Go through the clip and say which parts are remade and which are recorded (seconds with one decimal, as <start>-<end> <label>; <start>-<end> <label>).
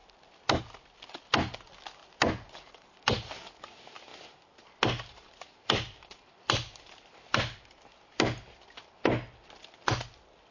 0.0-10.5 recorded